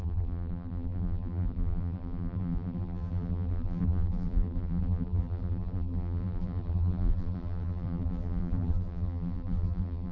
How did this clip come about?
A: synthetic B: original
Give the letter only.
A